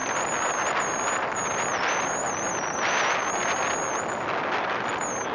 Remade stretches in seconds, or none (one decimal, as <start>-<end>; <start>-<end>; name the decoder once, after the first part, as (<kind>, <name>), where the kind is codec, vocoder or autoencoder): none